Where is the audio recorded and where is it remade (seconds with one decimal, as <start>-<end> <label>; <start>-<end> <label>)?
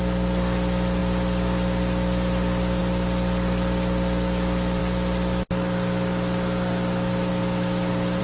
0.0-8.2 recorded